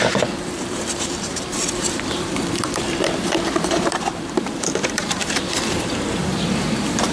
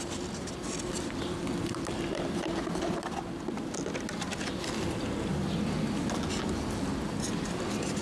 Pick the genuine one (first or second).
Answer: second